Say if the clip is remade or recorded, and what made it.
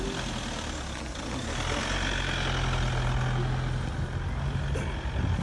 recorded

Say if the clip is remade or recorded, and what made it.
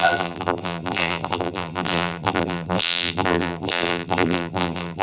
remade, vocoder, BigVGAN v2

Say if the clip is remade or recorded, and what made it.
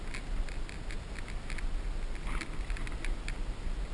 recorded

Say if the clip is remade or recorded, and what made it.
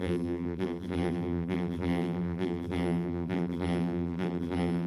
remade, vocoder, BigVGAN v2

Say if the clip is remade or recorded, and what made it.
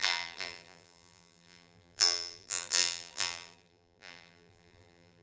remade, vocoder, BigVGAN v2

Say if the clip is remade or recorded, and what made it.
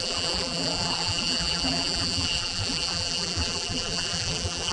remade, vocoder, BigVGAN v2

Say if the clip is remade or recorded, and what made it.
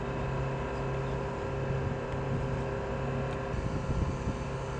recorded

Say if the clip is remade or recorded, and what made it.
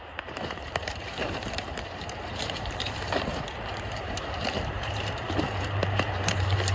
remade, vocoder, BigVGAN v2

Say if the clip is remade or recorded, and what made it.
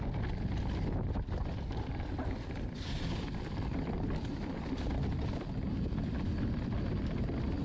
recorded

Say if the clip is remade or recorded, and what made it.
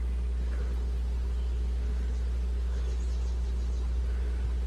recorded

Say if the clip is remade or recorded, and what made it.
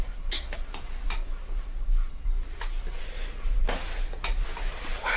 recorded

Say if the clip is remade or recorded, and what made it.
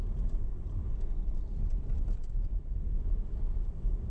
remade, vocoder, BigVGAN v2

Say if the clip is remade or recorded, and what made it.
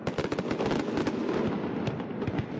recorded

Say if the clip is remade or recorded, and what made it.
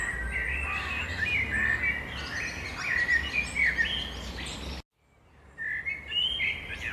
recorded